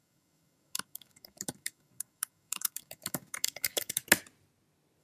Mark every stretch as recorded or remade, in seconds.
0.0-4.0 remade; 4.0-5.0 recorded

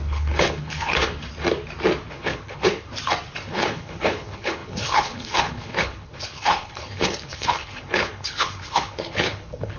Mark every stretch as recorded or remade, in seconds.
0.0-1.2 remade; 1.2-2.1 recorded; 2.1-2.9 remade; 2.9-3.5 recorded; 3.5-9.8 remade

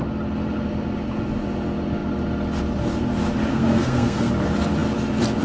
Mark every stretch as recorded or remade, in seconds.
0.0-3.5 recorded; 3.5-4.3 remade; 4.3-5.4 recorded

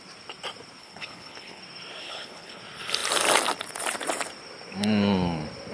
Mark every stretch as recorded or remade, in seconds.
0.0-0.8 recorded; 0.8-1.6 remade; 1.6-2.0 recorded; 2.0-2.6 remade; 2.6-5.7 recorded